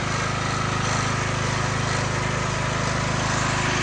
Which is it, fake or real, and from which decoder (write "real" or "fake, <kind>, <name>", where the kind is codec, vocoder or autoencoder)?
real